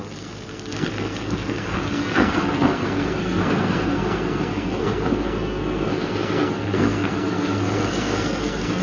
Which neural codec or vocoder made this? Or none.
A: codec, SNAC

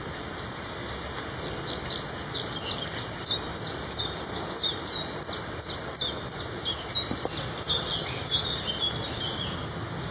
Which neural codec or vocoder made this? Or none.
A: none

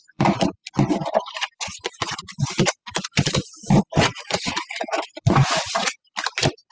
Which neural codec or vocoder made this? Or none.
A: vocoder, BigVGAN v2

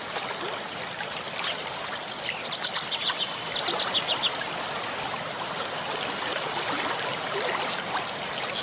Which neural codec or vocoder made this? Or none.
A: none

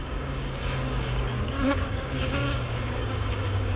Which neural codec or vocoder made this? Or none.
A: codec, DAC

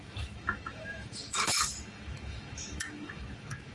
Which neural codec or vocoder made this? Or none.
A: autoencoder, DAC-VAE